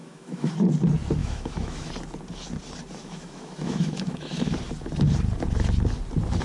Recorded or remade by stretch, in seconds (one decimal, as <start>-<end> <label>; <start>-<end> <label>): 0.0-0.5 remade; 0.5-1.2 recorded; 1.2-1.9 remade; 1.9-3.0 recorded; 3.0-4.5 remade; 4.5-6.4 recorded